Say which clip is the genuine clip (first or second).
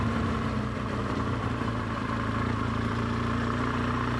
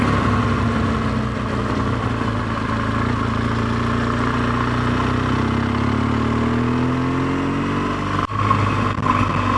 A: second